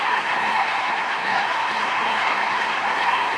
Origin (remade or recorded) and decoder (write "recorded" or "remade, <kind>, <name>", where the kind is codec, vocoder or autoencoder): remade, codec, SNAC